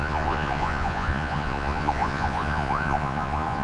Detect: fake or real fake